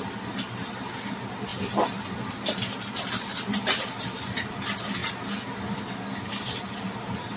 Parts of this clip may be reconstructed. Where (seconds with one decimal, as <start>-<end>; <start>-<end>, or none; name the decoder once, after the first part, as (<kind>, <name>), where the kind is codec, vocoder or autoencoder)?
none